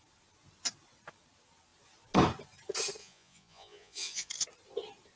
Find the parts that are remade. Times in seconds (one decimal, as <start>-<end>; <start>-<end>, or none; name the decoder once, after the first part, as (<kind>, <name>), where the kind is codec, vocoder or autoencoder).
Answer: 3.0-4.3 (vocoder, Vocos)